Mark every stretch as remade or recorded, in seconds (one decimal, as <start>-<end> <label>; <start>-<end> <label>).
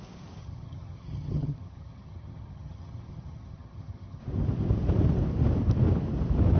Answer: 0.0-0.4 recorded; 0.4-4.2 remade; 4.2-6.6 recorded